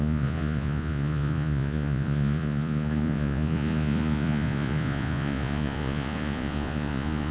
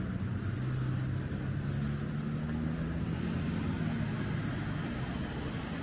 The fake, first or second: first